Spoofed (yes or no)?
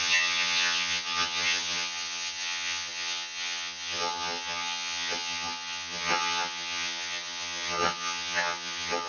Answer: yes